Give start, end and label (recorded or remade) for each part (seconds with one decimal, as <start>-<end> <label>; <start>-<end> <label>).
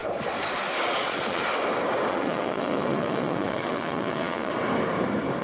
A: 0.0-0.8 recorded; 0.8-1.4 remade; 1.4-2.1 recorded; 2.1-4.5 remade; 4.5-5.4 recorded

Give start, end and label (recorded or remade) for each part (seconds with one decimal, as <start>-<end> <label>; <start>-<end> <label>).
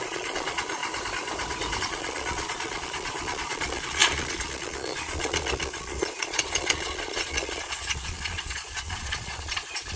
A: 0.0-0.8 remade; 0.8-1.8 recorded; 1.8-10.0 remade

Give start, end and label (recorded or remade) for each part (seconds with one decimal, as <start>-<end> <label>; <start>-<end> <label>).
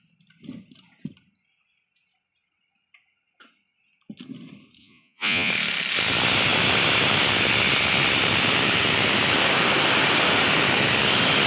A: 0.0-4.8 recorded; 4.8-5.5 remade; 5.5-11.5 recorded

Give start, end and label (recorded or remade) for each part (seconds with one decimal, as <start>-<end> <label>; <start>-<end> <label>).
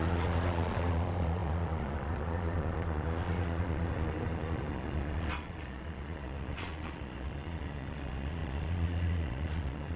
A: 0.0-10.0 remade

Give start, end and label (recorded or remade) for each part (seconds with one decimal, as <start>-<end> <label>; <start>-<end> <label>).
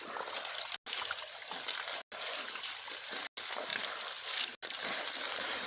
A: 0.0-5.7 recorded